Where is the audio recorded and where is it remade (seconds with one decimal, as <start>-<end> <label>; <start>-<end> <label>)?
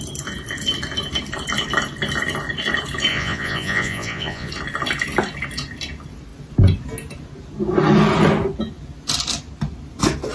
0.0-3.1 recorded; 3.1-4.5 remade; 4.5-10.3 recorded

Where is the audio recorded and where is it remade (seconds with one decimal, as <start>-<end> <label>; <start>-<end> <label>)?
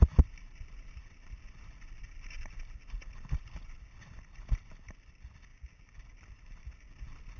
0.0-7.4 recorded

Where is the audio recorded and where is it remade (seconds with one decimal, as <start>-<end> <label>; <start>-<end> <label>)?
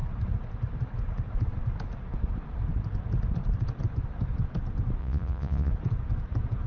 0.0-5.0 recorded; 5.0-5.7 remade; 5.7-6.7 recorded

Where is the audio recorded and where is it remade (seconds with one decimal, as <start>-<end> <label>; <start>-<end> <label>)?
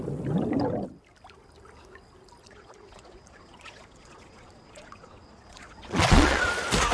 0.0-2.4 recorded; 2.4-6.5 remade; 6.5-6.9 recorded